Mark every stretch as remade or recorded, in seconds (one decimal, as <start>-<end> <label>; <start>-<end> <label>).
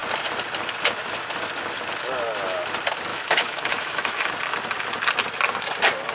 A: 0.0-3.1 recorded; 3.1-4.3 remade; 4.3-6.1 recorded